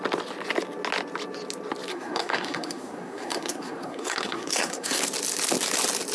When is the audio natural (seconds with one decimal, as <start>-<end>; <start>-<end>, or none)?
0.0-1.9; 5.0-6.1